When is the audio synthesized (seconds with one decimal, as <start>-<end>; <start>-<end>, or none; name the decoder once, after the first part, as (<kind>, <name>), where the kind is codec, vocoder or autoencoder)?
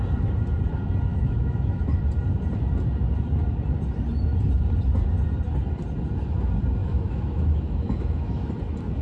1.1-2.0 (autoencoder, DAC-VAE); 6.8-8.5